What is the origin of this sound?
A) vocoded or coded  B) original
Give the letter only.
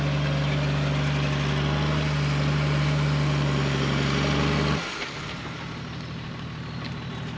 B